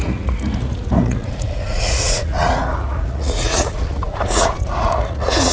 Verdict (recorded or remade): remade